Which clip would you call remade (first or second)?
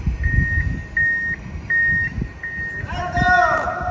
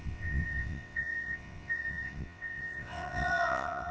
second